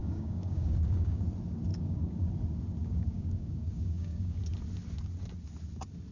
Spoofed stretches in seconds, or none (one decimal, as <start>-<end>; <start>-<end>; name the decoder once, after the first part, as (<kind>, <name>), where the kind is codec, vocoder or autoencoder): 0.0-1.2 (codec, DAC); 1.7-2.3; 2.8-4.4